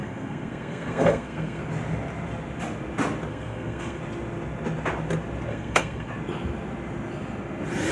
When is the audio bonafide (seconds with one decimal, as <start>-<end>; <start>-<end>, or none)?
1.6-3.3; 4.0-5.5; 6.1-7.9